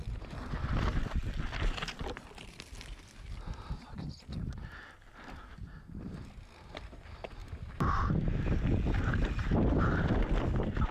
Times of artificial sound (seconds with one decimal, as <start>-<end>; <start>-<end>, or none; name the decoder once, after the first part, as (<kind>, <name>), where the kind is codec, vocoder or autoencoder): 2.0-4.2 (vocoder, BigVGAN v2); 7.4-7.9